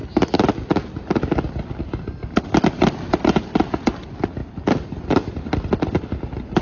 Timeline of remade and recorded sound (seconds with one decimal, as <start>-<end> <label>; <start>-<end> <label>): 0.0-2.6 recorded; 2.6-6.6 remade